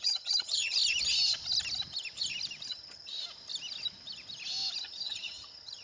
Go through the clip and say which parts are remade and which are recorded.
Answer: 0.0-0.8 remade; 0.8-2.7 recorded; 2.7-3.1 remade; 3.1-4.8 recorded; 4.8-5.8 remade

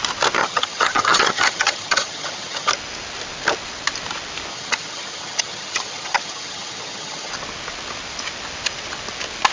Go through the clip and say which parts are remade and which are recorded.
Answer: 0.0-0.4 recorded; 0.4-2.7 remade; 2.7-4.5 recorded; 4.5-7.3 remade; 7.3-9.5 recorded

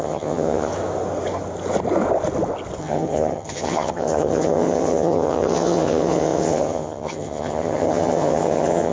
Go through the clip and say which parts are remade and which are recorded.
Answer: 0.0-0.7 remade; 0.7-2.8 recorded; 2.8-8.9 remade

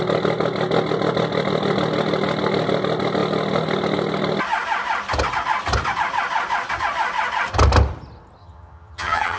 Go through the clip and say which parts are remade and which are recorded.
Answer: 0.0-8.4 recorded; 8.4-9.4 remade